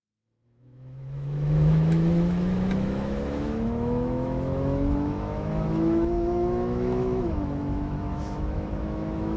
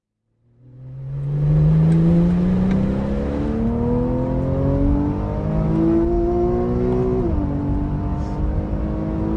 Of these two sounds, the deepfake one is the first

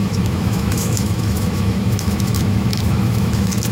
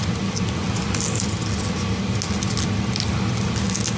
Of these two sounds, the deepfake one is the first